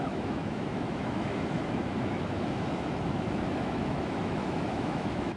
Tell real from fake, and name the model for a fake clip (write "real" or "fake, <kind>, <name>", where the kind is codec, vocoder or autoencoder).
fake, autoencoder, DAC-VAE